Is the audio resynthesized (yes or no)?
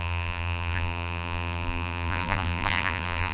yes